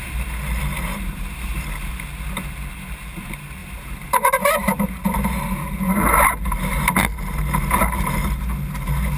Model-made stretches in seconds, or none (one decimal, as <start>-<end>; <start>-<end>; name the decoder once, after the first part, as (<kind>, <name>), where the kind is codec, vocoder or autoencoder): 0.9-1.9 (vocoder, BigVGAN v2); 3.6-4.8